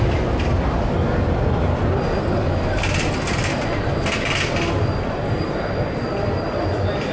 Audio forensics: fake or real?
real